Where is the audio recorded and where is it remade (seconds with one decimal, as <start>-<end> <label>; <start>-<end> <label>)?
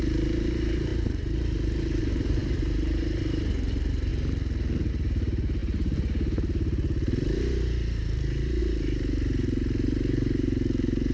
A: 0.0-4.1 remade; 4.1-4.9 recorded; 4.9-11.1 remade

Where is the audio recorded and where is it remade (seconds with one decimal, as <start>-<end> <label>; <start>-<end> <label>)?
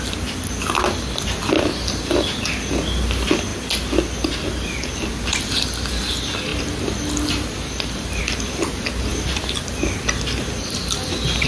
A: 0.0-6.5 recorded; 6.5-8.2 remade; 8.2-9.1 recorded; 9.1-9.6 remade; 9.6-11.5 recorded